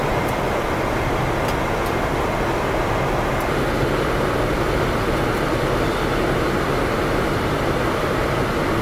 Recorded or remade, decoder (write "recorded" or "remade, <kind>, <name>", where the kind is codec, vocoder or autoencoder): recorded